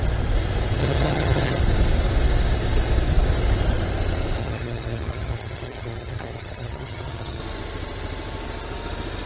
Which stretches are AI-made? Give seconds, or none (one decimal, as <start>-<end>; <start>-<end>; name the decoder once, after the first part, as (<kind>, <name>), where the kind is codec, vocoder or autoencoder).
0.8-1.6 (vocoder, HiFi-GAN); 4.4-7.4